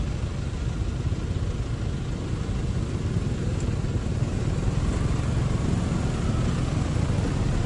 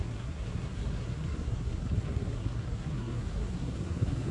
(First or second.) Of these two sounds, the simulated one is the second